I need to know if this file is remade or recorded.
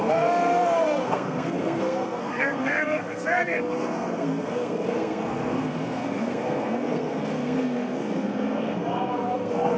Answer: remade